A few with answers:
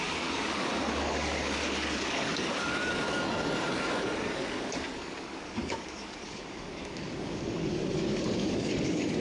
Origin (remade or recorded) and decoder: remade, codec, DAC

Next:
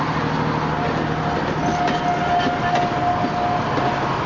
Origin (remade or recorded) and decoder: recorded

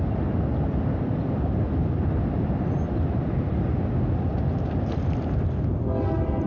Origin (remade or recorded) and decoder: recorded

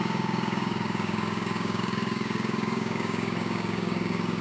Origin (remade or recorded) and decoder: remade, codec, DAC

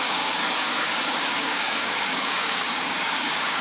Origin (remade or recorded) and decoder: remade, codec, DAC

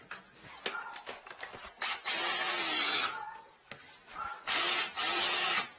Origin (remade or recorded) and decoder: recorded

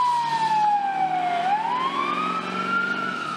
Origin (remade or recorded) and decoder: recorded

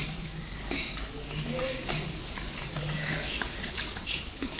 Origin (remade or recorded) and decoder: remade, codec, DAC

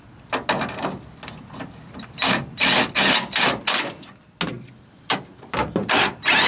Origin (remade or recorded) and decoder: recorded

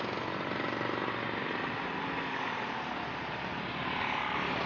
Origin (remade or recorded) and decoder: recorded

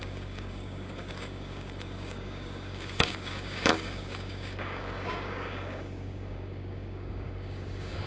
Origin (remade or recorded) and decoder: remade, codec, DAC